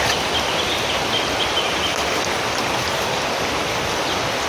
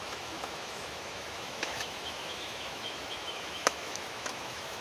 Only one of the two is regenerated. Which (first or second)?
second